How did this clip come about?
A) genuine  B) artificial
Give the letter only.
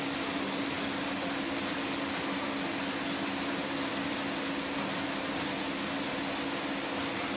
A